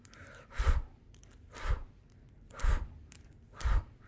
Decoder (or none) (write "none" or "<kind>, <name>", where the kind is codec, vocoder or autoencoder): vocoder, BigVGAN v2